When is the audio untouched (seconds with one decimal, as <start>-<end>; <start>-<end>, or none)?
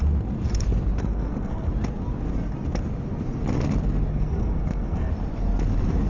0.0-1.0; 1.7-4.1; 5.1-6.1